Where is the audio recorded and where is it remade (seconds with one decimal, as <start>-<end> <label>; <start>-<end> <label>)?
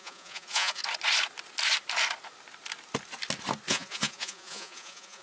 0.0-0.8 remade; 0.8-3.7 recorded; 3.7-5.2 remade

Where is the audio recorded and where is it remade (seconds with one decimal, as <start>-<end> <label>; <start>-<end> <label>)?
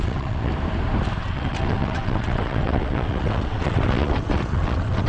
0.0-0.5 remade; 0.5-1.2 recorded; 1.2-5.1 remade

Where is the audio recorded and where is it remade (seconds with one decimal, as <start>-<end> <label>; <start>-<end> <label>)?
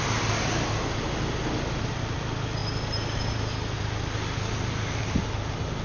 0.0-5.8 recorded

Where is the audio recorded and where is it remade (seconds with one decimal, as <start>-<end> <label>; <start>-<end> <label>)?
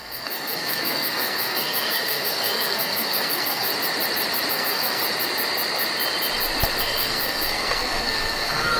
0.0-3.7 remade; 3.7-4.5 recorded; 4.5-5.0 remade; 5.0-6.8 recorded; 6.8-8.8 remade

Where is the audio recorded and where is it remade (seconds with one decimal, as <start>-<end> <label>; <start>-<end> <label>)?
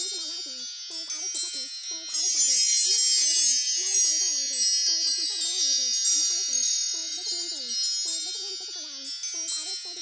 0.0-7.1 recorded; 7.1-7.6 remade; 7.6-10.0 recorded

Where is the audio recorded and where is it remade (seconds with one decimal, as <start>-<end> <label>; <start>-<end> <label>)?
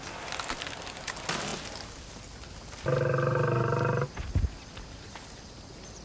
0.0-6.0 recorded